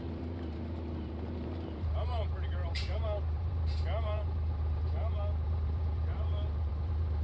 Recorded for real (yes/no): no